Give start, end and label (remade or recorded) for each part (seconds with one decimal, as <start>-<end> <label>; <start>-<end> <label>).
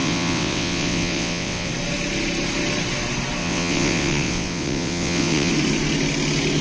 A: 0.0-1.7 remade; 1.7-3.4 recorded; 3.4-5.5 remade; 5.5-6.6 recorded